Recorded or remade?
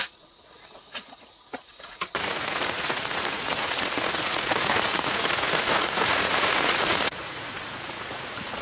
remade